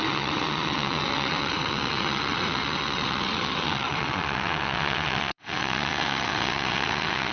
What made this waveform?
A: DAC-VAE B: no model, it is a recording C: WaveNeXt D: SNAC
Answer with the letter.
C